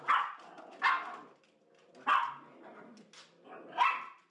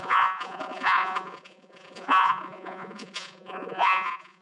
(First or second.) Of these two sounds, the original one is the first